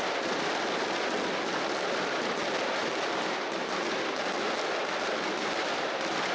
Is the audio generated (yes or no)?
no